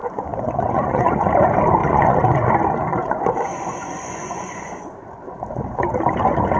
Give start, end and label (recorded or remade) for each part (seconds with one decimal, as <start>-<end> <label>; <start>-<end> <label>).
0.0-1.3 remade; 1.3-1.8 recorded; 1.8-2.5 remade; 2.5-2.9 recorded; 2.9-5.8 remade; 5.8-6.6 recorded